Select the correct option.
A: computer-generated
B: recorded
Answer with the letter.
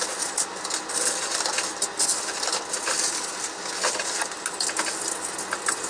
B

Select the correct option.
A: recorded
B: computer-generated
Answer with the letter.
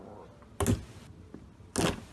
A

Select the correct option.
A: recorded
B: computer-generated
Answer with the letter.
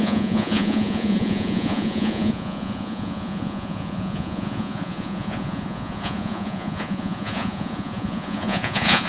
B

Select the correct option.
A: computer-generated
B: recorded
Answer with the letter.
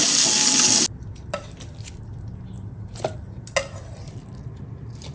B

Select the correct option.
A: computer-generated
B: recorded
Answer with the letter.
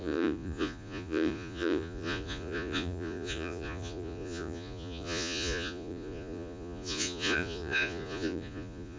A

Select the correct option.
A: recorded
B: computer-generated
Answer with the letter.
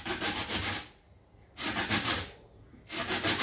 A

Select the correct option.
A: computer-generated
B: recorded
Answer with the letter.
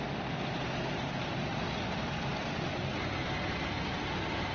B